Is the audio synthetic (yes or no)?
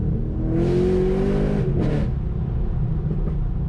no